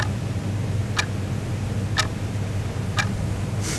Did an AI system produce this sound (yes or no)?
no